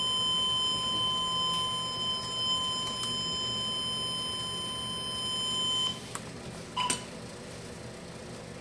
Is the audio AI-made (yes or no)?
no